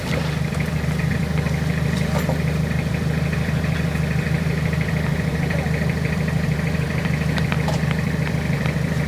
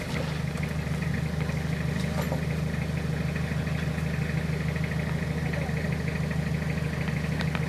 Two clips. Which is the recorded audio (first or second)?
second